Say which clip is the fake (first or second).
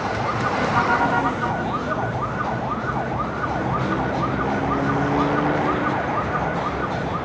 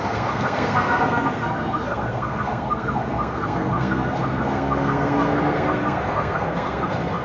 second